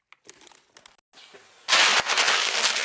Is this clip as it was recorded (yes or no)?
yes